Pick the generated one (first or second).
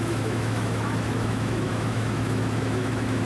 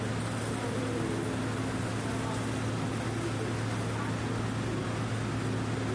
first